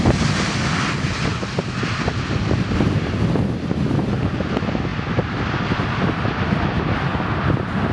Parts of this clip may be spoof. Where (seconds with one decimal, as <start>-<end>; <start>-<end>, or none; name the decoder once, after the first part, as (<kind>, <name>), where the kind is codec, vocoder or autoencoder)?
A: none